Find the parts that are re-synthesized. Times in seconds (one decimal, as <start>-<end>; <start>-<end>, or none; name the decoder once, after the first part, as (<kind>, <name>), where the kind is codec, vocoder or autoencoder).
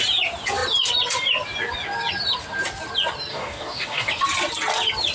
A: 3.3-4.1 (codec, DAC)